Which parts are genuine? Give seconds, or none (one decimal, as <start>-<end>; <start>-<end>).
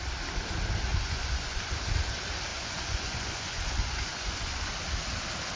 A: 0.0-0.9; 1.6-2.5; 4.7-5.6